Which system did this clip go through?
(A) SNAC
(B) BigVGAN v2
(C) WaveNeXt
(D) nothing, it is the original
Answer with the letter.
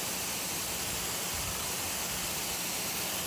D